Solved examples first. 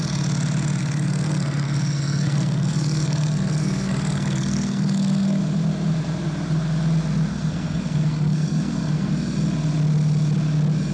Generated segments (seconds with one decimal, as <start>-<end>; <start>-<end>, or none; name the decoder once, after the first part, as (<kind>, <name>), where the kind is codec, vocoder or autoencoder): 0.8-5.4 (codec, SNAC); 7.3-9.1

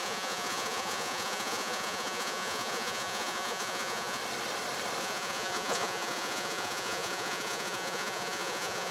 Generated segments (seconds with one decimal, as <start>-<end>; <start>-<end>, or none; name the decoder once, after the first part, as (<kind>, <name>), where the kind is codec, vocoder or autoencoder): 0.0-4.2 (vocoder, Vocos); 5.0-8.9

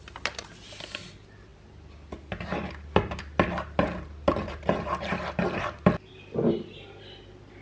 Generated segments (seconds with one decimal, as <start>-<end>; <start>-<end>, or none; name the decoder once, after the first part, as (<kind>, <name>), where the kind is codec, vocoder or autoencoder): none